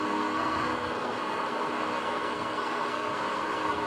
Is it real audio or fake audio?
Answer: fake